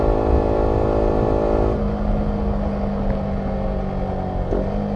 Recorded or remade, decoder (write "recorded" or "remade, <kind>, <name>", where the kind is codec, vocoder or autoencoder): recorded